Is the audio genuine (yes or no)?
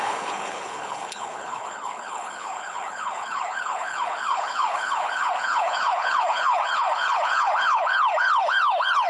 no